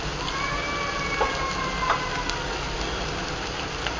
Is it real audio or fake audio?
real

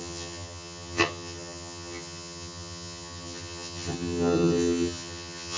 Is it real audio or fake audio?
fake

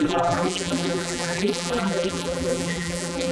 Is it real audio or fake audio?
fake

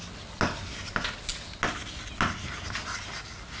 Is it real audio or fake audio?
real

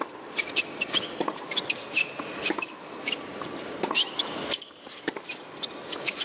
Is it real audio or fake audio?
real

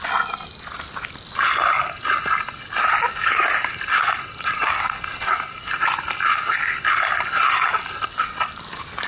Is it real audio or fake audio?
real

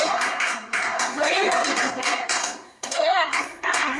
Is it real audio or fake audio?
fake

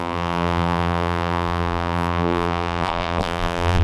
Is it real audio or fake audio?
fake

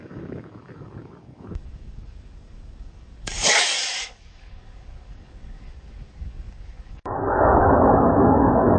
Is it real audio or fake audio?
fake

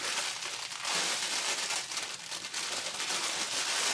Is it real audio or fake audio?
real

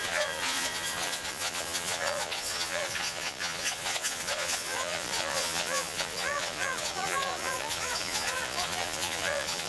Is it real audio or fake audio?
fake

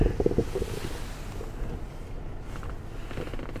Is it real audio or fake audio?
real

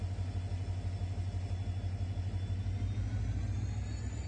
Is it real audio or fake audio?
real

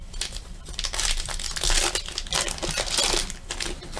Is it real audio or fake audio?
real